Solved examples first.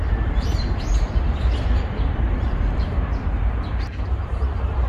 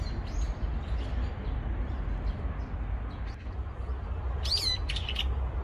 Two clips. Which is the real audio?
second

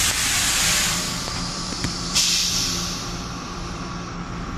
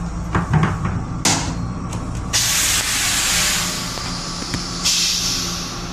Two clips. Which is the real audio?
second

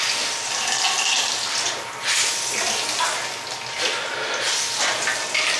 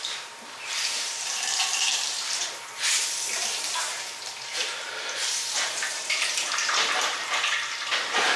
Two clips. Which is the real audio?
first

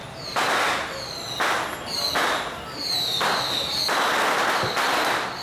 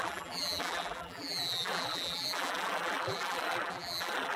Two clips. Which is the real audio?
first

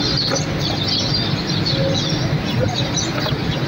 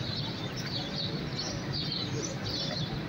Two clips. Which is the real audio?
first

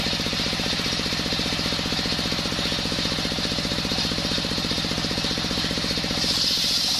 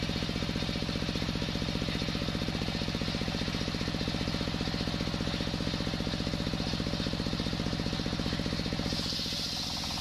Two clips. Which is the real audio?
second